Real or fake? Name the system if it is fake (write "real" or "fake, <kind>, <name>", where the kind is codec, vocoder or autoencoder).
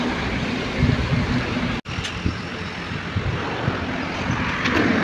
real